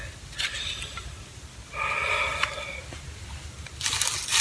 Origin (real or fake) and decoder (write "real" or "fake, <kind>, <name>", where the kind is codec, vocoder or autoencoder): real